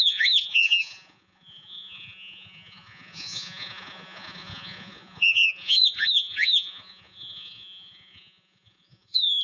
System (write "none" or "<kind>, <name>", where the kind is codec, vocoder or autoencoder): vocoder, Vocos